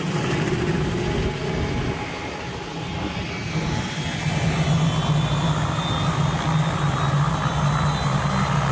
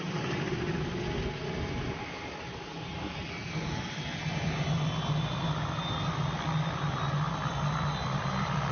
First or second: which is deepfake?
second